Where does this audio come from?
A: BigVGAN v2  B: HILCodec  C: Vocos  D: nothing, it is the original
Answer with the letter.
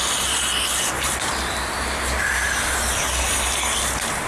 D